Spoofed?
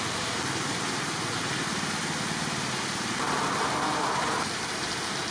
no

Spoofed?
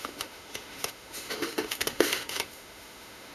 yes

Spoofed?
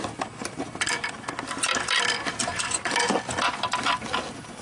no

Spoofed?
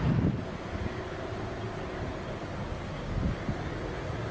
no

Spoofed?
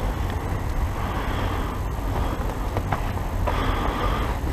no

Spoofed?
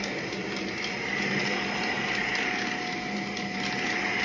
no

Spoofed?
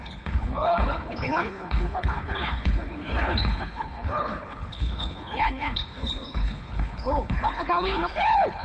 yes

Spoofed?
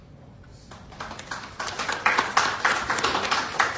no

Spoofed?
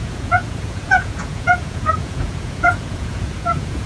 yes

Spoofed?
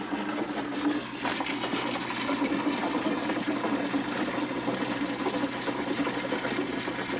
no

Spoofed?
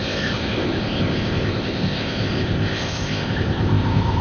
yes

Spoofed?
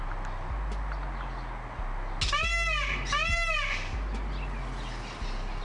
no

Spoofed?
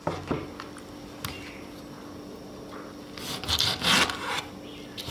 no